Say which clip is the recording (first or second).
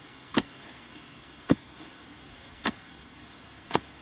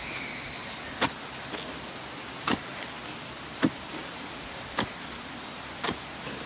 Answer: second